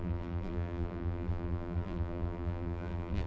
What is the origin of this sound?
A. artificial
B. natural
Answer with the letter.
A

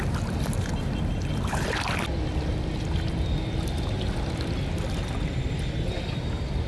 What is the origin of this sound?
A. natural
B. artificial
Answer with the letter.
A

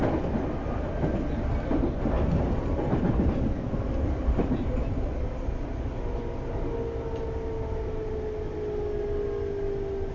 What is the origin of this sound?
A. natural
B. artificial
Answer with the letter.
A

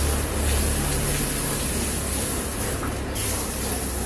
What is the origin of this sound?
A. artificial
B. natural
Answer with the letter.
B